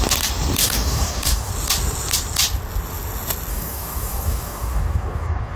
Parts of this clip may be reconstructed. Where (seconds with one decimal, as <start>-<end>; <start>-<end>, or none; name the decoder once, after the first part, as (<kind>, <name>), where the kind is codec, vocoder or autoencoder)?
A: 0.6-1.5 (codec, DAC); 3.5-5.6